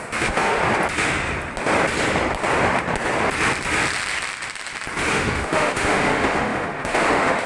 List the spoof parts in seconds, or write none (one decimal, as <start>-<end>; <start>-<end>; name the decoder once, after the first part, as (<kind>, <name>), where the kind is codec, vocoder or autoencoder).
0.0-0.6 (autoencoder, DAC-VAE); 5.1-7.5